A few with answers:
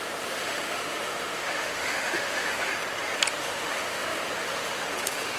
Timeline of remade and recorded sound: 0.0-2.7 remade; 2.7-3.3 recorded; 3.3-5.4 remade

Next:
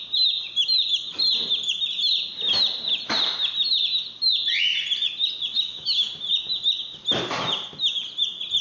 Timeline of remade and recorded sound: 0.0-5.5 recorded; 5.5-6.1 remade; 6.1-8.6 recorded

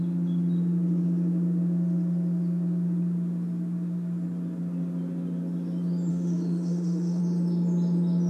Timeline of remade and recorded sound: 0.0-6.1 recorded; 6.1-7.2 remade; 7.2-8.3 recorded